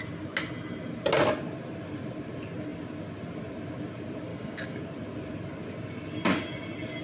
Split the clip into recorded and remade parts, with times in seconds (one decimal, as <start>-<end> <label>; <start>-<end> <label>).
0.0-4.3 recorded; 4.3-4.8 remade; 4.8-7.0 recorded